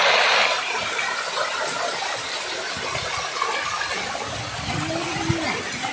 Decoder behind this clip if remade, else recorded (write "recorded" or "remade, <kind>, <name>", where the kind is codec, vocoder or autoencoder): recorded